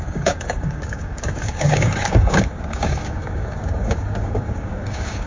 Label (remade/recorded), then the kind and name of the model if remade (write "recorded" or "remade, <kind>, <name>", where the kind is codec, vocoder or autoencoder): remade, codec, DAC